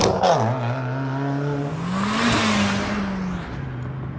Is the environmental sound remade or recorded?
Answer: recorded